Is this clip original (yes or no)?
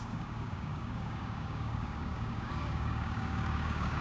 no